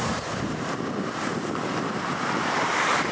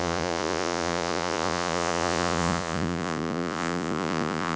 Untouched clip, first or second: first